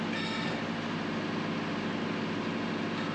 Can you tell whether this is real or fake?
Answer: real